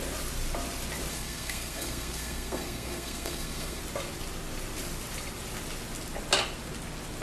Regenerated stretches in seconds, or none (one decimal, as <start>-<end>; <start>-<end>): 1.1-3.8